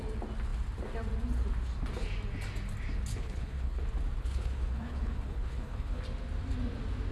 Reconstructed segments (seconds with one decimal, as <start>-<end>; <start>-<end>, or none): 3.1-3.8; 4.2-6.0

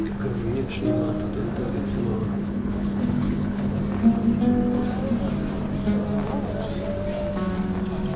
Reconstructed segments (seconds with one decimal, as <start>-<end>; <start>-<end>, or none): 2.2-3.8